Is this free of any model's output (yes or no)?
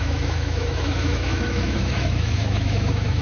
no